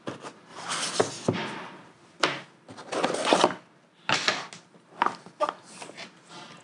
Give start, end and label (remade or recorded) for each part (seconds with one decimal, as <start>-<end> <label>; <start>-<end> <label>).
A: 0.0-0.5 recorded; 0.5-1.0 remade; 1.0-6.6 recorded